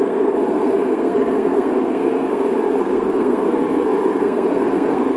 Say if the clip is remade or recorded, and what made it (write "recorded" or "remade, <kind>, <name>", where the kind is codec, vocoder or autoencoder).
remade, codec, SNAC